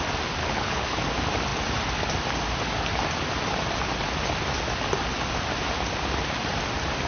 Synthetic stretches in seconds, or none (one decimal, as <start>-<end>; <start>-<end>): 0.4-1.0